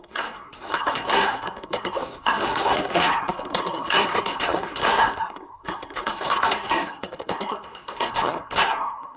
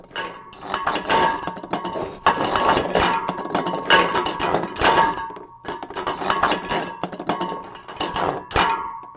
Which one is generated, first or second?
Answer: first